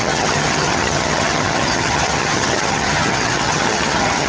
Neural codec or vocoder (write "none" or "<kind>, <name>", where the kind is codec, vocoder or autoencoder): vocoder, HiFi-GAN